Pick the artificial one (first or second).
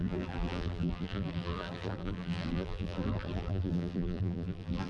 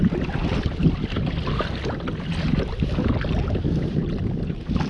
first